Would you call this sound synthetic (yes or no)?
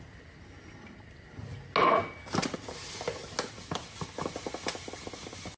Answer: no